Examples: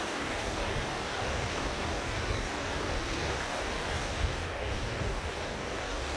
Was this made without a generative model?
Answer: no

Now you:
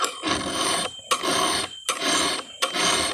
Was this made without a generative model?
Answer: yes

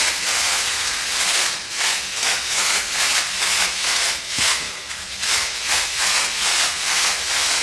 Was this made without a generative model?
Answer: no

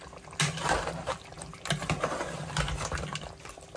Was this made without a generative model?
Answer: yes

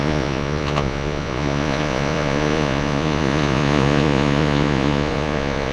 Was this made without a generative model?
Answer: no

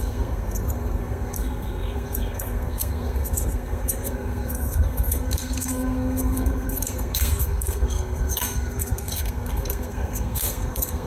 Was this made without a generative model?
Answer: no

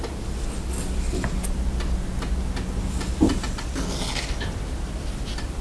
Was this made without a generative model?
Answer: yes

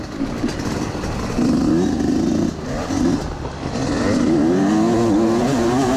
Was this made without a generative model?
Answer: yes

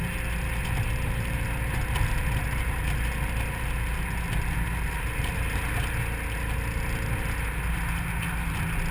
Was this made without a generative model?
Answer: yes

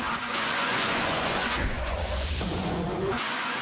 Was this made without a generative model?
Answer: no